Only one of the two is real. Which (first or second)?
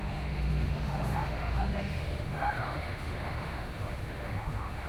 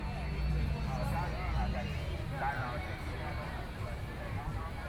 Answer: second